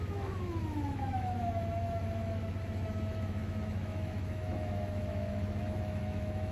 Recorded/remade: remade